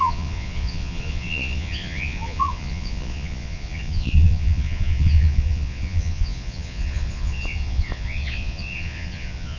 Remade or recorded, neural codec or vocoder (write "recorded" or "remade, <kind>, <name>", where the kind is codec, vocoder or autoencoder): remade, vocoder, Vocos